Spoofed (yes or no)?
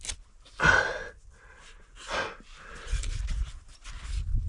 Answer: no